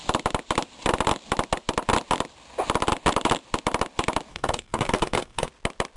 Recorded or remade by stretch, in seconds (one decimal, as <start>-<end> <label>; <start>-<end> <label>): 0.0-4.3 recorded; 4.3-5.5 remade; 5.5-6.0 recorded